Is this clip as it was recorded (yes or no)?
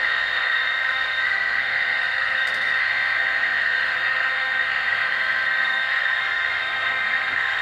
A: no